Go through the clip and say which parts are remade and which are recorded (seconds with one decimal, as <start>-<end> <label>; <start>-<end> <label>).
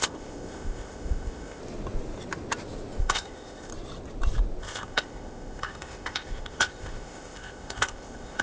0.0-1.6 remade; 1.6-3.0 recorded; 3.0-3.7 remade; 3.7-4.6 recorded; 4.6-8.4 remade